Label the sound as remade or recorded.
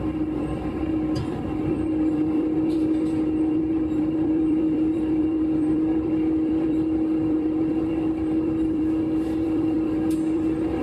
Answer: remade